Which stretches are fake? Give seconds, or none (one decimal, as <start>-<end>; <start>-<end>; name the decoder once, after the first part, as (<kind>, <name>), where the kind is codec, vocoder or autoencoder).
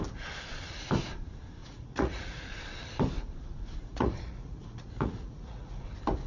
1.6-2.6 (vocoder, Vocos); 3.8-5.8